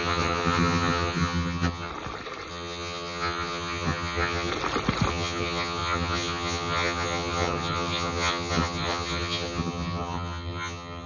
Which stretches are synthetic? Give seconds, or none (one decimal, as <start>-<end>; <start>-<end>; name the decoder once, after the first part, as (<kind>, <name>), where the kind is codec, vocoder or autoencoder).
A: 0.0-1.9 (vocoder, HiFi-GAN); 2.5-4.5; 5.1-11.1